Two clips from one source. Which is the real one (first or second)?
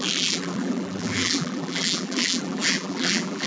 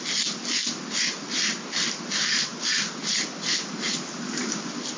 second